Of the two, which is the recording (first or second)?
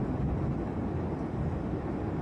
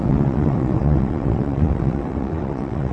first